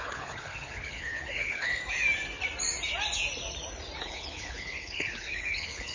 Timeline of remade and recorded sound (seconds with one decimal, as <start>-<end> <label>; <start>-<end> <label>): 0.0-1.8 remade; 1.8-4.0 recorded; 4.0-5.9 remade

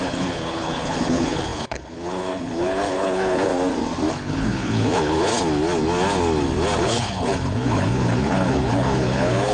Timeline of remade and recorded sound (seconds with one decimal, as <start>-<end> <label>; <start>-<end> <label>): 0.0-3.5 remade; 3.5-4.1 recorded; 4.1-5.3 remade; 5.3-6.8 recorded; 6.8-9.5 remade

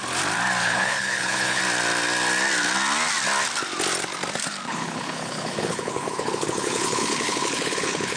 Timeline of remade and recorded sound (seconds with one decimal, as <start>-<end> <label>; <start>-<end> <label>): 0.0-0.6 recorded; 0.6-1.6 remade; 1.6-4.7 recorded; 4.7-8.2 remade

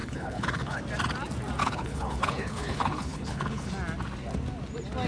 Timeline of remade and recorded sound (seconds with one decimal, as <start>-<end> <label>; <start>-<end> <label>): 0.0-0.8 remade; 0.8-1.6 recorded; 1.6-3.7 remade; 3.7-5.1 recorded

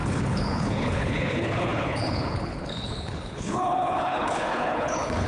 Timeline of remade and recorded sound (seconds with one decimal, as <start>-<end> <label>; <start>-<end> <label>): 0.0-5.3 remade

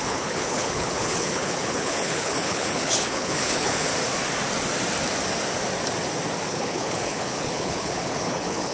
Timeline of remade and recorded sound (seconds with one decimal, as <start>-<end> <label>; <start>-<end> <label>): 0.0-3.9 remade; 3.9-6.5 recorded; 6.5-8.7 remade

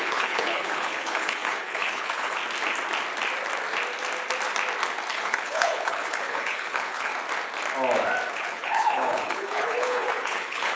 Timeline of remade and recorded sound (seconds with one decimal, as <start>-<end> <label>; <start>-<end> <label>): 0.0-2.4 remade; 2.4-5.1 recorded; 5.1-7.1 remade; 7.1-8.3 recorded; 8.3-10.8 remade

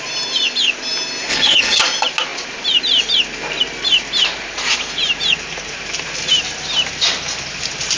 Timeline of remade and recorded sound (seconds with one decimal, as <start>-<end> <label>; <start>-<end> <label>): 0.0-1.3 recorded; 1.3-1.8 remade; 1.8-8.0 recorded